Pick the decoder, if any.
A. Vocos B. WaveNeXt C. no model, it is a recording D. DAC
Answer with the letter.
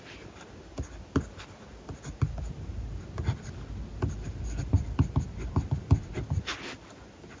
C